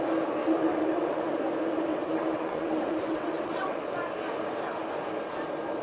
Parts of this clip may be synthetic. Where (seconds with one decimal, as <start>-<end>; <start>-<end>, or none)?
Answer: 0.4-1.3; 1.9-4.0